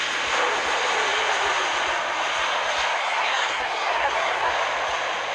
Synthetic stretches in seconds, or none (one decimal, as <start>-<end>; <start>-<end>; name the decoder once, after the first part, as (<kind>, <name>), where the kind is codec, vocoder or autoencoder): 3.0-4.5 (codec, SNAC)